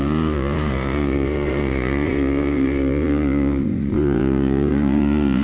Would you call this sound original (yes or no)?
no